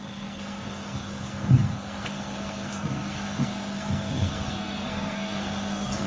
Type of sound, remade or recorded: remade